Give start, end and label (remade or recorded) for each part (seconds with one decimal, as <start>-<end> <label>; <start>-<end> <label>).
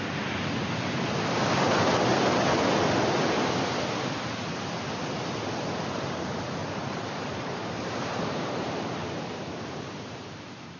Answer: 0.0-6.6 recorded; 6.6-10.8 remade